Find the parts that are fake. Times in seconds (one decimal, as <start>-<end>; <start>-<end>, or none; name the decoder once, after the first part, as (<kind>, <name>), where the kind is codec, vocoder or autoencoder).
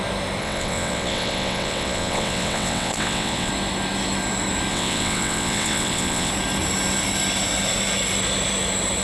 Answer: 0.4-3.5 (vocoder, WaveNeXt); 4.7-6.3